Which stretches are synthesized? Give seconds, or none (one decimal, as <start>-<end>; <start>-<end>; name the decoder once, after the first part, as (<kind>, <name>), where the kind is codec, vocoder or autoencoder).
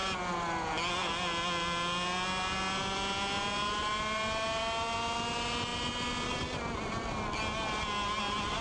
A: none